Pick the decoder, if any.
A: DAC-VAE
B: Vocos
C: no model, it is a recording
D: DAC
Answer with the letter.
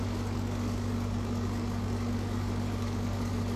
D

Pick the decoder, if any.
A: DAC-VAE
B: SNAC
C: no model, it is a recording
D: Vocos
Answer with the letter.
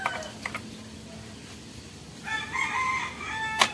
C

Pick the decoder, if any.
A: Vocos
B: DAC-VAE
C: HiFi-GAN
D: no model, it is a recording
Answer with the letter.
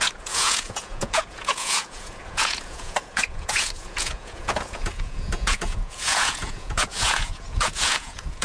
A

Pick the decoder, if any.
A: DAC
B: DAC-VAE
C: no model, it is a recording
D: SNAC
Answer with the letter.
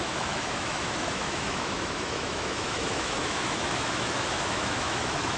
B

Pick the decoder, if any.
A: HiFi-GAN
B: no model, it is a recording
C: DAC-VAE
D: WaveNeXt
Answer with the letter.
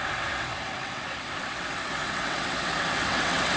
D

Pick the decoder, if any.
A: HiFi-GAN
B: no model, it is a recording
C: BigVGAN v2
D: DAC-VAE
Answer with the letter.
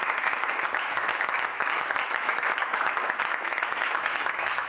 D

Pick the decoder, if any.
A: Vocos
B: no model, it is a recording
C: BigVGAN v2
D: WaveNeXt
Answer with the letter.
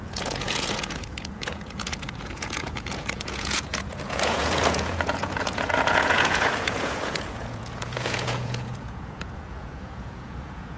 A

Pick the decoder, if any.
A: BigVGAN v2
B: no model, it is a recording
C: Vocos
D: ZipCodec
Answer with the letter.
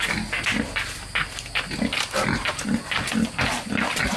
B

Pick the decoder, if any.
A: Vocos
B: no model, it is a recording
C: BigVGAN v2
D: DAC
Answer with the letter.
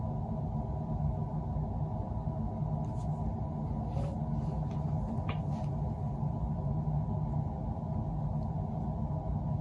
B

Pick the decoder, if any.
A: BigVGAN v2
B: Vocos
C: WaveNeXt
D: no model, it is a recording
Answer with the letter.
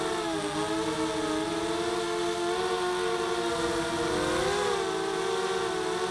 D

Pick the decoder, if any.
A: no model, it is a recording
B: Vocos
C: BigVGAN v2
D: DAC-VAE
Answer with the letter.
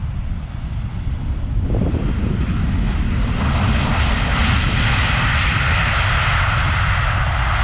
A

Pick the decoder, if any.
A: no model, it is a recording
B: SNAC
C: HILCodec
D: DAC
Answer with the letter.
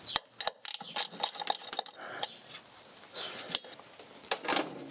A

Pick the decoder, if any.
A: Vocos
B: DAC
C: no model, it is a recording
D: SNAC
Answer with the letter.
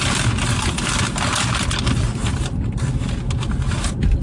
C